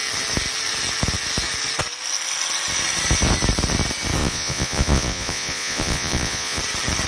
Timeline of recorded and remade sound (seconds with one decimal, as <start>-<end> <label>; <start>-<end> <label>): 0.0-4.2 recorded; 4.2-6.6 remade; 6.6-7.1 recorded